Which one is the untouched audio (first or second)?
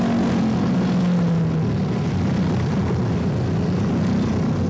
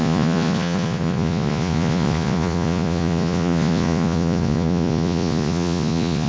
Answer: first